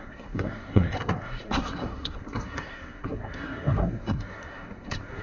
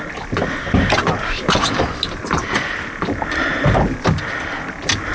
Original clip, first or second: second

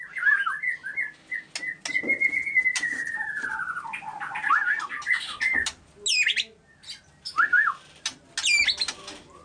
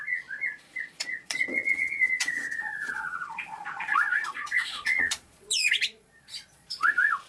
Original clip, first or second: first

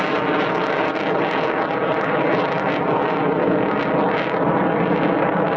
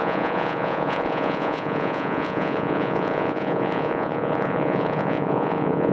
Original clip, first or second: first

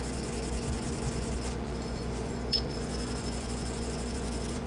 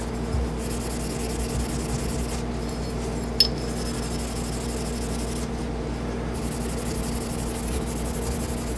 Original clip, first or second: second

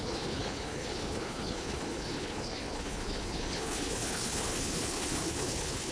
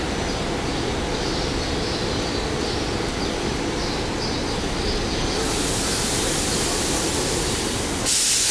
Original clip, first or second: second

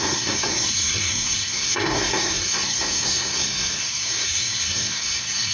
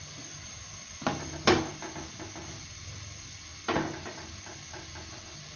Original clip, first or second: second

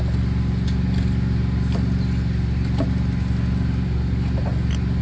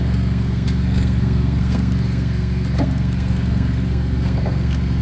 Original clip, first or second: first